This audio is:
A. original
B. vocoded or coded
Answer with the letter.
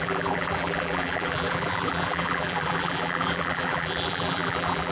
B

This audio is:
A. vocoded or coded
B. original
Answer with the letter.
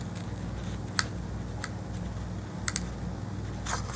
B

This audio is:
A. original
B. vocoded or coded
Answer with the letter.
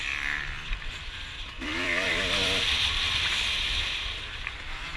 B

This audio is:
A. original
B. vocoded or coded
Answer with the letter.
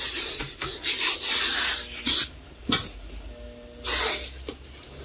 A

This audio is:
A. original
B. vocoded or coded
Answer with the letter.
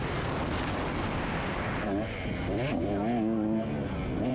A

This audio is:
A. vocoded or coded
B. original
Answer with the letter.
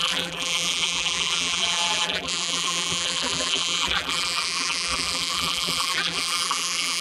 A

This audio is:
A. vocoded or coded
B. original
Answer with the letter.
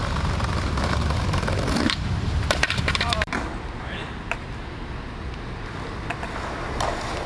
A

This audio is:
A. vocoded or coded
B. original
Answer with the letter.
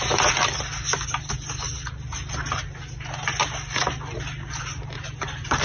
B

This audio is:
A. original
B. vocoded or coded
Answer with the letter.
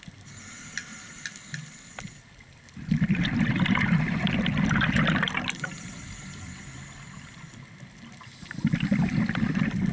A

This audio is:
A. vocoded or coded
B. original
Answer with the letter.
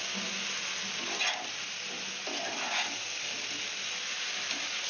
B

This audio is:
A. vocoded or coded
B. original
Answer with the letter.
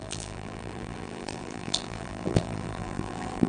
A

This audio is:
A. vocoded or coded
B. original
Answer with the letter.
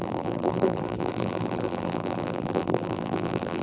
A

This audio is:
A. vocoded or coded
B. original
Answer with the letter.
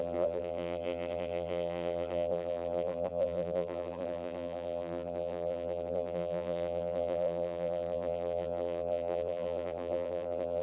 A